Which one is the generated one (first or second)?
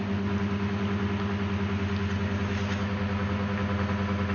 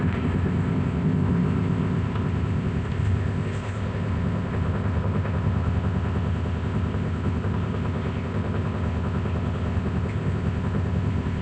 second